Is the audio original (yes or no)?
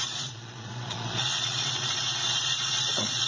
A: no